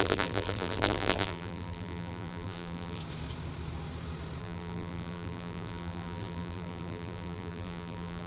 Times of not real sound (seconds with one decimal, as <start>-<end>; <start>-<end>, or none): 0.0-3.0; 4.4-8.3